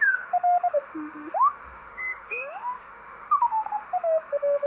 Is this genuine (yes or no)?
no